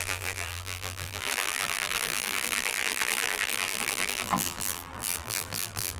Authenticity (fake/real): fake